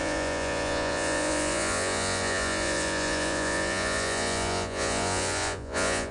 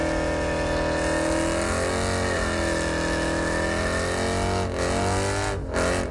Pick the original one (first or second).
second